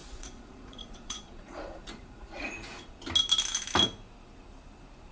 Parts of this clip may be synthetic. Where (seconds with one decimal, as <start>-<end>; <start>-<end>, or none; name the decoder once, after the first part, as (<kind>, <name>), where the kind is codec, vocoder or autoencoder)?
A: 0.0-3.0 (vocoder, Vocos)